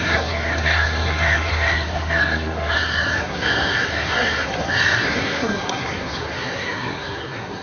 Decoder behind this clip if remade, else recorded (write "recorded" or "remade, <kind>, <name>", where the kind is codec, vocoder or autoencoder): remade, codec, SNAC